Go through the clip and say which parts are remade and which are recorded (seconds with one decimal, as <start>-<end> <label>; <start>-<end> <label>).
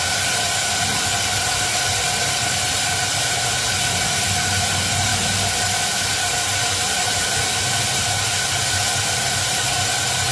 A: 0.0-10.3 recorded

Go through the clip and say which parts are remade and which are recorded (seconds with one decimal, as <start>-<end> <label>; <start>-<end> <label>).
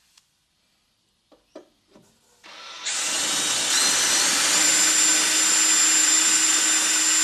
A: 0.0-3.8 recorded; 3.8-4.7 remade; 4.7-6.0 recorded; 6.0-6.6 remade; 6.6-7.2 recorded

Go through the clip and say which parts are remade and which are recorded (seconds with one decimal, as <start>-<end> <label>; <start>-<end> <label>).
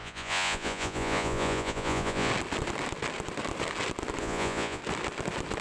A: 0.0-2.3 remade; 2.3-4.2 recorded; 4.2-4.8 remade; 4.8-5.6 recorded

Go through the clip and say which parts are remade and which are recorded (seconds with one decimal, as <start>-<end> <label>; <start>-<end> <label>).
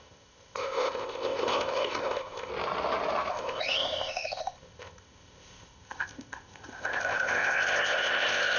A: 0.0-2.5 remade; 2.5-3.3 recorded; 3.3-8.6 remade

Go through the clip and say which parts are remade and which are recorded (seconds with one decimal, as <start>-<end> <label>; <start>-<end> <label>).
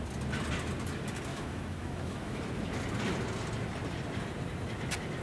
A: 0.0-1.3 recorded; 1.3-2.4 remade; 2.4-5.2 recorded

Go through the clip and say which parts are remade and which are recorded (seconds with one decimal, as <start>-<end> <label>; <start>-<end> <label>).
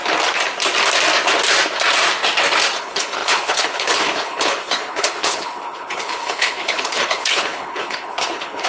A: 0.0-2.8 recorded; 2.8-8.7 remade